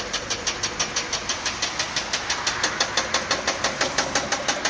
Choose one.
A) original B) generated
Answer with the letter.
A